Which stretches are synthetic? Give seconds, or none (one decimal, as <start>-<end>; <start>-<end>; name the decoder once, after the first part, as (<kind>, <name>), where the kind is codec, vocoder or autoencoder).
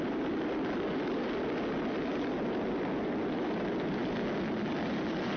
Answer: none